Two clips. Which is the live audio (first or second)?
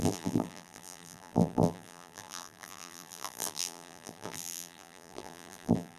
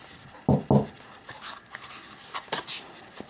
second